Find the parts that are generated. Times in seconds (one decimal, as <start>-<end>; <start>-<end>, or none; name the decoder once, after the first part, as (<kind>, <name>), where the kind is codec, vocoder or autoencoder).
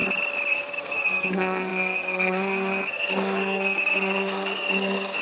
0.5-5.2 (codec, SNAC)